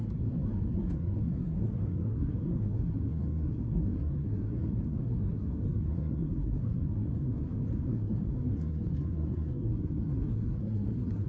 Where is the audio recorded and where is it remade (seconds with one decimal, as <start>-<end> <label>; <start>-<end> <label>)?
0.0-11.3 remade